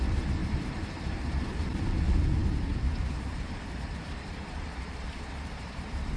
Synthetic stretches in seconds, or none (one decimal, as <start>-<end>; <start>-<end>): 0.4-1.3; 2.4-6.2